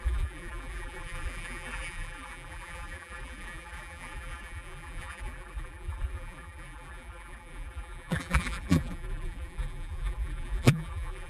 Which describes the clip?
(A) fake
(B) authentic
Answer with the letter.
A